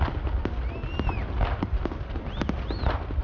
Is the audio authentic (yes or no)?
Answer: yes